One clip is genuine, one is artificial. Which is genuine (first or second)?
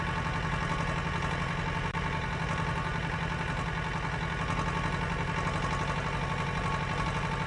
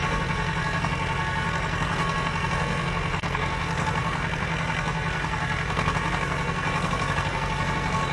first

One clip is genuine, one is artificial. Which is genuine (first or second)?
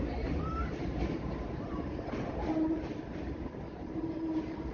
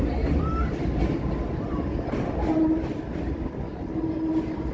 second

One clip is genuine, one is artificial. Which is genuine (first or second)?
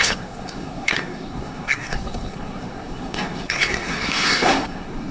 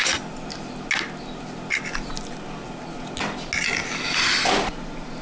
second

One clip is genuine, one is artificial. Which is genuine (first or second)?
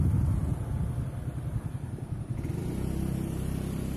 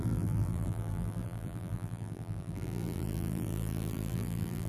first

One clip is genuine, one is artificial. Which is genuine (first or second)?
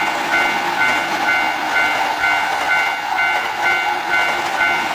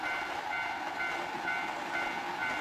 first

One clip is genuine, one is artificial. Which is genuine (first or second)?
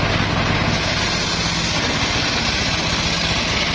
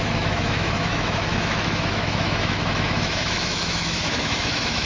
first